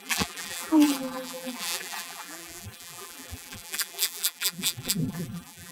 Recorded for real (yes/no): no